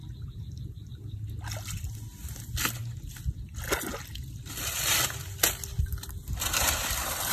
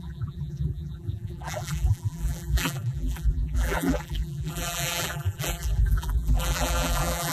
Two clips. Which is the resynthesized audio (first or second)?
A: second